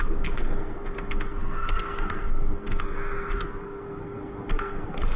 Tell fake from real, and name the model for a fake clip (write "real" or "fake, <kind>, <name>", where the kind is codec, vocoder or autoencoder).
fake, codec, SNAC